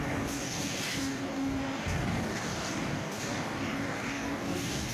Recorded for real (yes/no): no